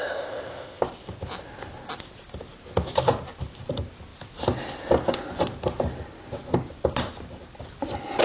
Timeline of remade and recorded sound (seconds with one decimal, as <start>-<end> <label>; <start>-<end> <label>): 0.0-0.8 remade; 0.8-8.2 recorded